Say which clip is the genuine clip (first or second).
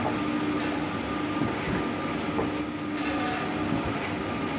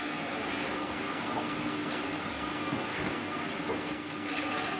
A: first